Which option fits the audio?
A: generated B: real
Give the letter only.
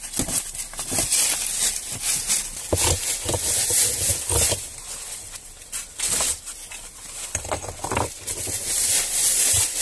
B